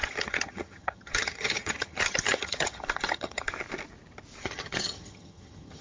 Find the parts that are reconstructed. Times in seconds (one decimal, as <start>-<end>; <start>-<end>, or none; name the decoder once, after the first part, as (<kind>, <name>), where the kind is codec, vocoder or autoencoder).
0.0-3.5 (vocoder, HiFi-GAN); 4.4-5.8